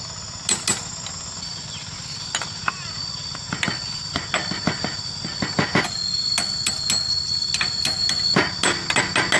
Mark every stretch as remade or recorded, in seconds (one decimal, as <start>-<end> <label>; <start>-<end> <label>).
0.0-9.4 recorded